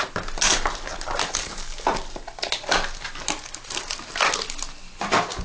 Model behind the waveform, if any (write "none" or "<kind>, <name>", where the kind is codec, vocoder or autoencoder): none